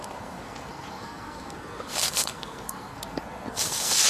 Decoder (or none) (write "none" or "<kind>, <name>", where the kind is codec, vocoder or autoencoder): codec, SNAC